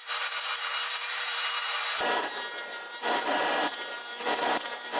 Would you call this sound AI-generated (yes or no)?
yes